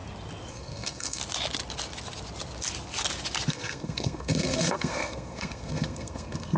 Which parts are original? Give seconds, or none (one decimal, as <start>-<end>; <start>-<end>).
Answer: 0.0-0.5; 1.2-3.5